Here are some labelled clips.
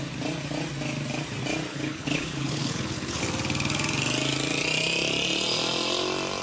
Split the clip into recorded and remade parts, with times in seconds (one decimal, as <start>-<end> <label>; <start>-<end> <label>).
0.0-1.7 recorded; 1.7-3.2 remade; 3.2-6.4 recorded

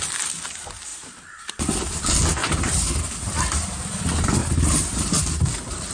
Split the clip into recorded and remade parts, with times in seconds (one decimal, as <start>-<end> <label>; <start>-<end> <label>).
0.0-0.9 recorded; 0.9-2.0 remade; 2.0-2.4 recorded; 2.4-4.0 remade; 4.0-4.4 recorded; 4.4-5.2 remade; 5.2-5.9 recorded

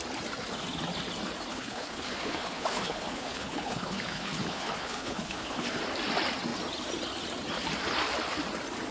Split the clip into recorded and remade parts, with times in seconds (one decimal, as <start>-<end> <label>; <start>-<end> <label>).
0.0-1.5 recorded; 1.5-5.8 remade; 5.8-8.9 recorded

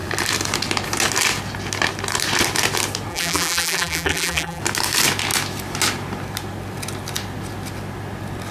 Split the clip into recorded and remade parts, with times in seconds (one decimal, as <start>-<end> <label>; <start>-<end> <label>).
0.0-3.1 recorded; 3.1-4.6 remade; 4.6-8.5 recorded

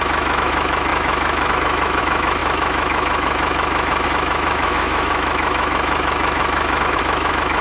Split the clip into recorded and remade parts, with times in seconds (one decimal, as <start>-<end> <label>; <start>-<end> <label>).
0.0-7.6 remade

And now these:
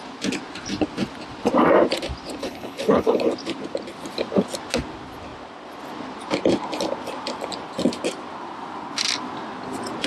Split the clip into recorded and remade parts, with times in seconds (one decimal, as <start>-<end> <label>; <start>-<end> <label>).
0.0-2.4 recorded; 2.4-3.3 remade; 3.3-10.1 recorded